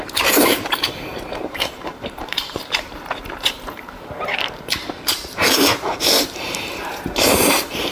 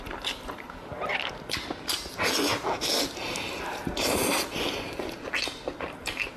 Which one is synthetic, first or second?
first